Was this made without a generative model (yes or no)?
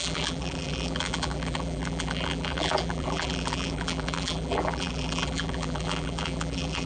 no